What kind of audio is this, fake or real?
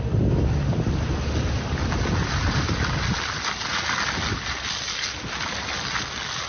real